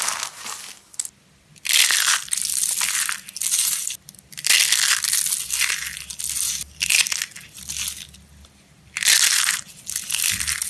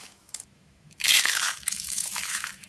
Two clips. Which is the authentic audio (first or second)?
first